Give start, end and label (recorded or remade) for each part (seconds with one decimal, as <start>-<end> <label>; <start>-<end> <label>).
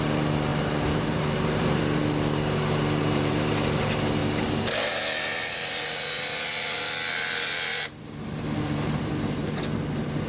0.0-0.5 recorded; 0.5-1.8 remade; 1.8-3.0 recorded; 3.0-3.8 remade; 3.8-4.2 recorded; 4.2-5.0 remade; 5.0-7.7 recorded; 7.7-9.1 remade; 9.1-10.3 recorded